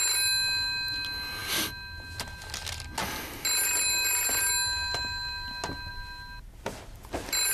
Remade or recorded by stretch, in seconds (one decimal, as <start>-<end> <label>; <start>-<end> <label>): 0.0-7.5 recorded